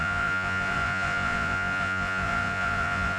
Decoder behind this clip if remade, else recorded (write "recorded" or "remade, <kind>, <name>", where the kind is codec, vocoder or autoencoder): remade, vocoder, Vocos